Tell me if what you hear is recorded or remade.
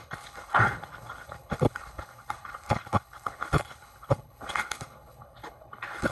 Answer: remade